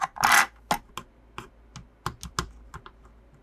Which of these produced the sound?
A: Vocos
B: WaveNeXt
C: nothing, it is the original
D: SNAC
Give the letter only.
C